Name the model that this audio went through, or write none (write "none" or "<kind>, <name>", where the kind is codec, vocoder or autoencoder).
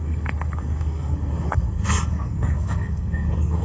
codec, SNAC